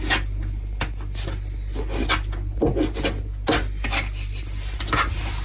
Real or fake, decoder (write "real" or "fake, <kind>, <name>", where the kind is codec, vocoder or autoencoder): real